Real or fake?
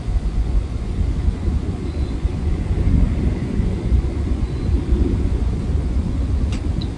fake